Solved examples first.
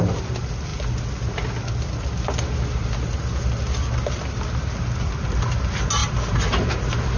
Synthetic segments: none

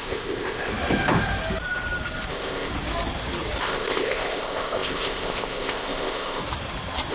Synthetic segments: 0.0-0.7 (codec, ZipCodec); 2.3-2.7; 3.6-6.4

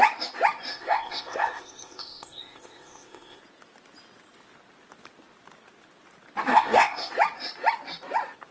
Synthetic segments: 0.7-3.4 (codec, ZipCodec); 6.5-7.1

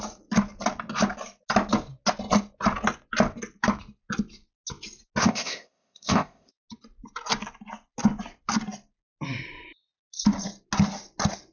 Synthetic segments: 5.2-6.5 (codec, ZipCodec)

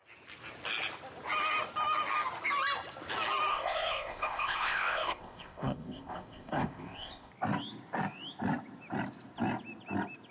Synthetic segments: 3.5-7.3 (codec, ZipCodec)

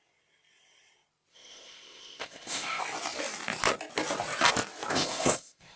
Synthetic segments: 1.3-2.8 (codec, ZipCodec); 4.9-5.8

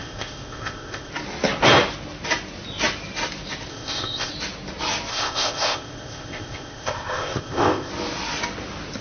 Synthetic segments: 0.0-1.1 (codec, ZipCodec); 3.7-4.3; 5.1-7.9